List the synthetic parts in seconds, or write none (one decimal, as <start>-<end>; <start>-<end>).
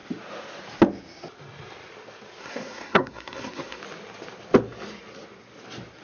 2.4-3.8